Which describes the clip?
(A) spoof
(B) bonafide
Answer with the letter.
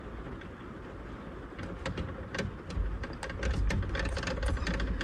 B